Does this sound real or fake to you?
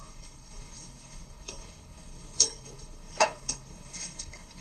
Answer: fake